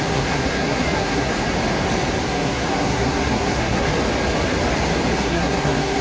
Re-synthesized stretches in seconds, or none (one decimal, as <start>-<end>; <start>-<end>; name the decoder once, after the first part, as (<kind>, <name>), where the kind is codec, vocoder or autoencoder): 0.0-1.3 (codec, SNAC); 2.3-3.9; 5.2-6.0